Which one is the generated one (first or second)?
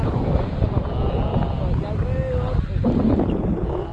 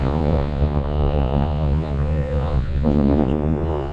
second